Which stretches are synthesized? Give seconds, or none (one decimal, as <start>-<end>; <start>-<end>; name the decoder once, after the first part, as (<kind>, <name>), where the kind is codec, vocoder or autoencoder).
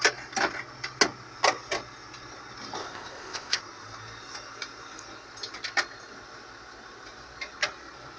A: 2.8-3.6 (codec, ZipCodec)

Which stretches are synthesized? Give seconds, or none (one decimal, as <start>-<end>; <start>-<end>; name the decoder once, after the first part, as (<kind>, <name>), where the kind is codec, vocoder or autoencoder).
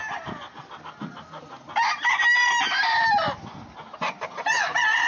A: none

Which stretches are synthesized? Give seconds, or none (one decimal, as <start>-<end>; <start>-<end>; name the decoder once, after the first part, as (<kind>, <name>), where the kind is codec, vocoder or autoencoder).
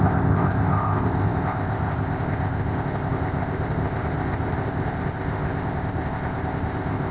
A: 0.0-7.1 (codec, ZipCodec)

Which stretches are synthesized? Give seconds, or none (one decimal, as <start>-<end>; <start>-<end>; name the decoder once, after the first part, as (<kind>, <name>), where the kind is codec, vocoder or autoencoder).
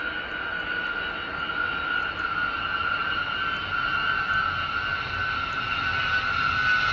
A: none